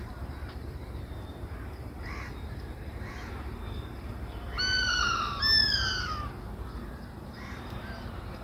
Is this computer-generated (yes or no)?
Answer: yes